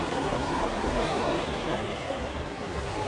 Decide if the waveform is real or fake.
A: fake